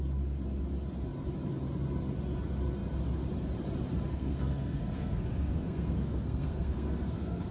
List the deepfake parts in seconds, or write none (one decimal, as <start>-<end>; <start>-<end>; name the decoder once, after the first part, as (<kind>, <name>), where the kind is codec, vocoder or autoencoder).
4.1-7.5 (codec, SNAC)